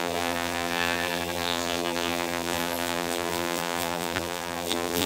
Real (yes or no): no